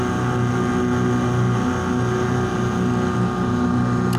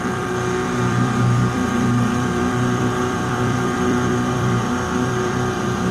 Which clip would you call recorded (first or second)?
first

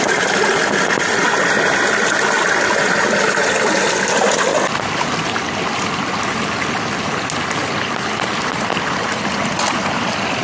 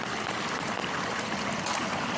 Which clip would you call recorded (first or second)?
first